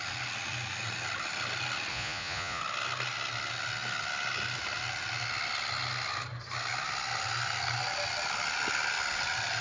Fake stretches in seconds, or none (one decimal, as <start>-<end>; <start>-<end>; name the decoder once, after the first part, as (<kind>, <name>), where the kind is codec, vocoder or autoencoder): 1.9-2.6 (vocoder, Vocos)